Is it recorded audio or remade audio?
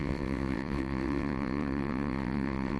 remade